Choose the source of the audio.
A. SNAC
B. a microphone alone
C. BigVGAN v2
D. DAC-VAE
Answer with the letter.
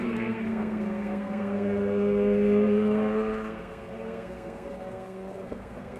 A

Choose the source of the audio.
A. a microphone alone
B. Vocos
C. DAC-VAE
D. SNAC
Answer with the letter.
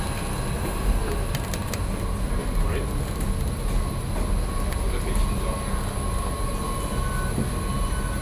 A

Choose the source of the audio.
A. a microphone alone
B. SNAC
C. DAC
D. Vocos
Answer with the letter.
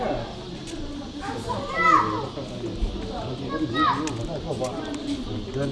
A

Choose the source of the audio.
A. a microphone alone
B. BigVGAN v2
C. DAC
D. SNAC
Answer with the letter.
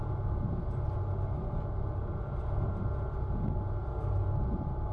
A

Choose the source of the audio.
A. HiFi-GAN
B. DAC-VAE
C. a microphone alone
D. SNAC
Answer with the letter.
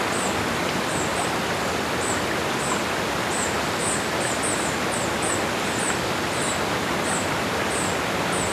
C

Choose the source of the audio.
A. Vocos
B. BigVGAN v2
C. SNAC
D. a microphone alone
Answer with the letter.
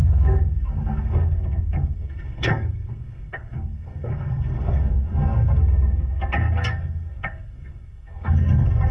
C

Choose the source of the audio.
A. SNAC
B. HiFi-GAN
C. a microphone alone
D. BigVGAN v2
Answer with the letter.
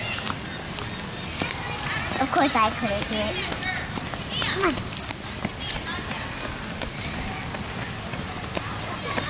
C